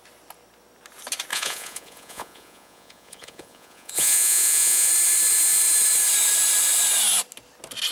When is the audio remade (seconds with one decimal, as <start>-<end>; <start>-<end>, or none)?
1.3-4.9

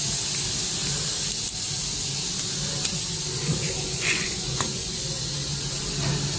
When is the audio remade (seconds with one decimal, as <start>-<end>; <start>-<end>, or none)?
3.4-5.3